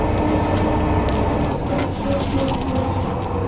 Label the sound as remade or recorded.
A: recorded